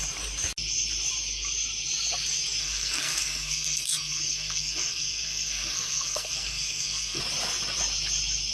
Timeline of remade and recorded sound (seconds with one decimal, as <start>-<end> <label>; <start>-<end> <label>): 0.0-2.6 recorded; 2.6-7.2 remade; 7.2-8.5 recorded

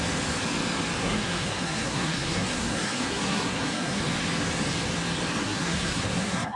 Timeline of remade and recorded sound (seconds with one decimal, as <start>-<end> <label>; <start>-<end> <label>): 0.0-1.0 recorded; 1.0-4.0 remade; 4.0-5.4 recorded; 5.4-6.6 remade

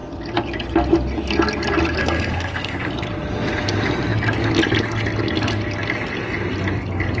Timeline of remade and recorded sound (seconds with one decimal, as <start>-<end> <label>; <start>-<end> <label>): 0.0-2.0 recorded; 2.0-2.9 remade; 2.9-7.2 recorded